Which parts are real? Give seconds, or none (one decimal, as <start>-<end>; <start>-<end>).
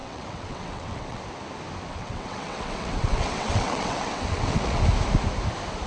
1.2-1.9; 4.8-5.9